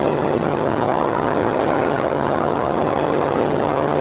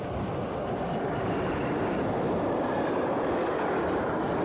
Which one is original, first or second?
second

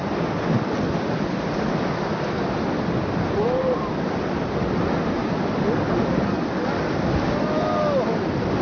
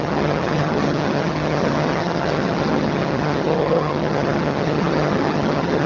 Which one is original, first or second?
first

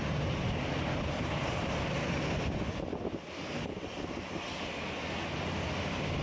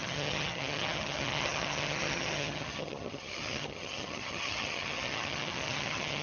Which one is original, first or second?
first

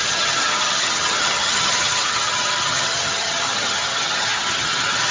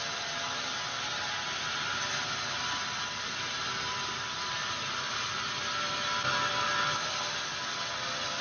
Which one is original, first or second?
second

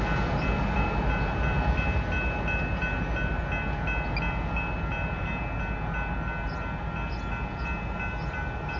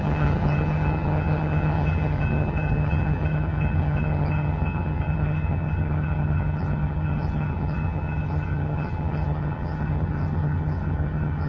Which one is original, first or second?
first